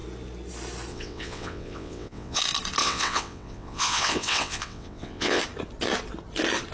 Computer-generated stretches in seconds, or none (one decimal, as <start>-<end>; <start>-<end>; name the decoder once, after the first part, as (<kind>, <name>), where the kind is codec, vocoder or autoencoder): 0.9-2.4 (vocoder, WaveNeXt); 2.8-5.4